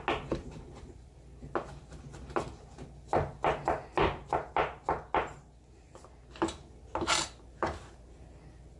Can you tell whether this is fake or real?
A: real